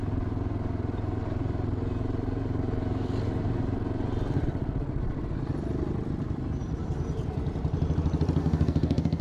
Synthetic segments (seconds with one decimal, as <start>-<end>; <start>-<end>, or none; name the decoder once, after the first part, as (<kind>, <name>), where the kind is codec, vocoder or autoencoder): 8.4-9.2 (codec, SNAC)